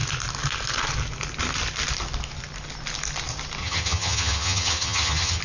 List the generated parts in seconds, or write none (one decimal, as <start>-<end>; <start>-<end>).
3.6-5.4